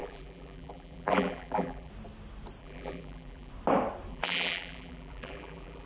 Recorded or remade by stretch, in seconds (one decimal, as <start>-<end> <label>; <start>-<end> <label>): 0.0-1.9 remade; 1.9-2.6 recorded; 2.6-3.5 remade; 3.5-4.1 recorded; 4.1-5.9 remade